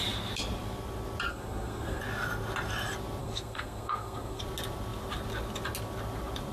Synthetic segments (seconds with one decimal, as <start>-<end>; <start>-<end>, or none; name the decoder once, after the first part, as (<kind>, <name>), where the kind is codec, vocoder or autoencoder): 1.3-2.0 (codec, SNAC); 3.2-4.4